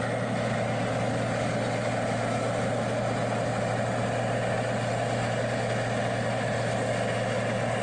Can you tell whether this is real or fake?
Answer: real